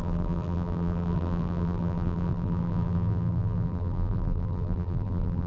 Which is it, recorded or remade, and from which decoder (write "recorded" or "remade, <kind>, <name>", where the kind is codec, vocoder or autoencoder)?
remade, vocoder, BigVGAN v2